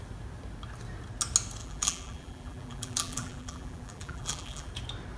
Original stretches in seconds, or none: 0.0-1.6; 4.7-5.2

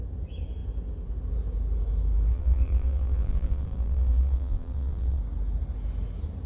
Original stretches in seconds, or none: 0.0-2.3; 5.2-6.5

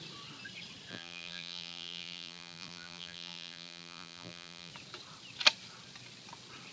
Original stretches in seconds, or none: 0.0-0.9; 4.7-6.7